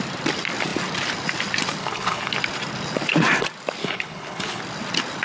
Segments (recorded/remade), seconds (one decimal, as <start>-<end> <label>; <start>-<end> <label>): 0.0-1.8 recorded; 1.8-2.3 remade; 2.3-3.8 recorded; 3.8-4.6 remade; 4.6-5.2 recorded